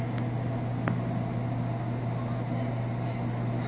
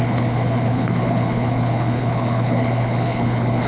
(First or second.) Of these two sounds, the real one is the first